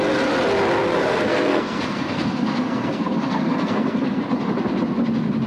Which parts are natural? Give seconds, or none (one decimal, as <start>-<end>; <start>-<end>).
0.0-0.9; 4.2-5.5

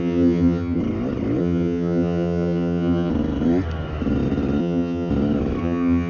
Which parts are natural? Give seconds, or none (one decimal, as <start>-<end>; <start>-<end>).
0.8-1.4; 3.1-4.6; 5.1-5.6